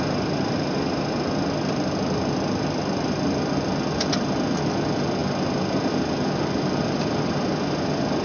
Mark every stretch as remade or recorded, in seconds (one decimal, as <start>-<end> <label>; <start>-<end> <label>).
0.0-8.2 recorded